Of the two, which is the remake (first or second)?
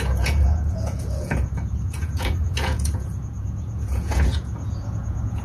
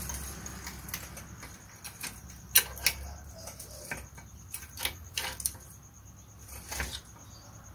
first